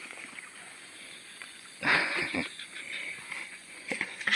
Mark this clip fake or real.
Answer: fake